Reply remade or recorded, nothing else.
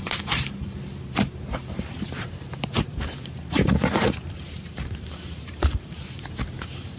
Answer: remade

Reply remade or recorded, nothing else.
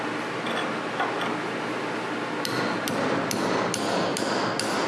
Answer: recorded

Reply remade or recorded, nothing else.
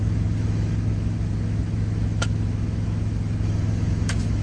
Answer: remade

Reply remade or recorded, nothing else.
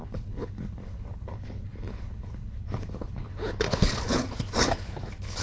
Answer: remade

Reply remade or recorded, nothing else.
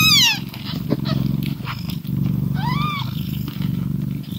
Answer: recorded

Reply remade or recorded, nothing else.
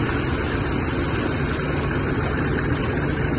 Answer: recorded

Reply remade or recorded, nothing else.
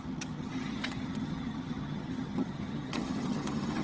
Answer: remade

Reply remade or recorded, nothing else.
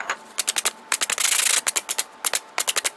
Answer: recorded